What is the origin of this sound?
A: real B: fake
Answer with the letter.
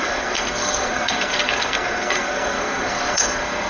B